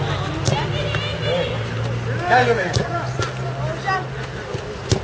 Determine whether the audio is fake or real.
real